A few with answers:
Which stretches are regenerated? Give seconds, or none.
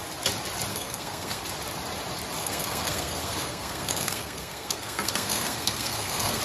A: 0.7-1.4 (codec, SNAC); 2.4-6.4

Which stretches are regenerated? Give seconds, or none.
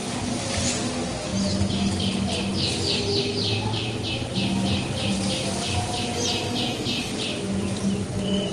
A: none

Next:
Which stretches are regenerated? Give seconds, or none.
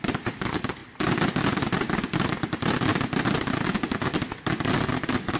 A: none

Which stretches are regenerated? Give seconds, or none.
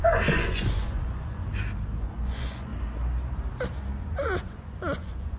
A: 0.0-1.4 (vocoder, Vocos); 2.0-2.7; 4.0-5.4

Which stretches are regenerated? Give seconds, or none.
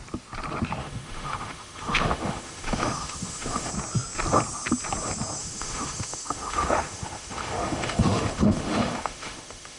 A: 0.8-3.7 (autoencoder, DAC-VAE); 5.4-9.8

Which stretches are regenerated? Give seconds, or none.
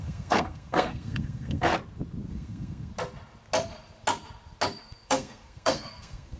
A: 0.0-1.7 (codec, SNAC); 2.3-2.9; 4.8-6.4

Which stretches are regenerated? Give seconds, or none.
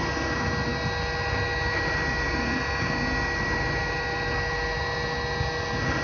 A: none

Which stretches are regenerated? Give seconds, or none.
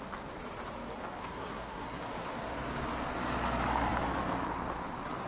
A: 1.2-2.0 (codec, SNAC)